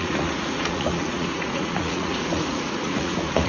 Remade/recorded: remade